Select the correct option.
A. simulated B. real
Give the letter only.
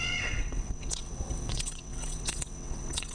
A